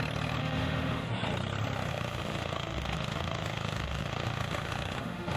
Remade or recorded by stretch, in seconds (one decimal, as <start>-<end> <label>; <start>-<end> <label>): 0.0-0.4 recorded; 0.4-1.1 remade; 1.1-1.9 recorded; 1.9-5.4 remade